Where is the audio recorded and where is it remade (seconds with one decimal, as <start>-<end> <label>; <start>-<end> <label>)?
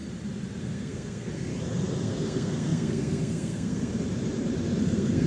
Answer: 0.0-0.6 recorded; 0.6-1.5 remade; 1.5-2.0 recorded; 2.0-3.9 remade; 3.9-4.8 recorded; 4.8-5.3 remade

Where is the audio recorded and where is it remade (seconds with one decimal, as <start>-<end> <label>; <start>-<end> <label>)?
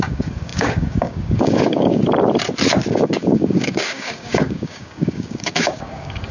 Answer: 0.0-2.0 remade; 2.0-2.9 recorded; 2.9-6.3 remade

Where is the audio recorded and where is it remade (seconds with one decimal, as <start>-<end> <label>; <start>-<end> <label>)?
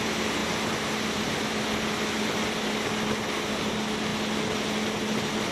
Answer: 0.0-0.4 remade; 0.4-3.5 recorded; 3.5-5.5 remade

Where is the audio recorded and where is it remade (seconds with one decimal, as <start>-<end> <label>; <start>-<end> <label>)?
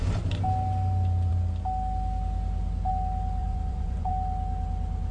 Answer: 0.0-3.4 recorded; 3.4-4.1 remade; 4.1-5.1 recorded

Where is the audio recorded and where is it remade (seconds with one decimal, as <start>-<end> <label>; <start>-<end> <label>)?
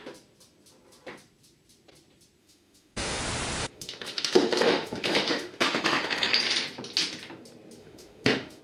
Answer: 0.0-2.4 recorded; 2.4-3.2 remade; 3.2-3.6 recorded; 3.6-6.3 remade; 6.3-7.8 recorded; 7.8-8.6 remade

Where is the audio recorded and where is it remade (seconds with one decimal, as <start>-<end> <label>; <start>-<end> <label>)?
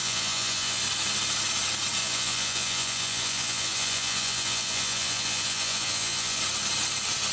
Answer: 0.0-0.8 remade; 0.8-2.0 recorded; 2.0-6.4 remade; 6.4-7.3 recorded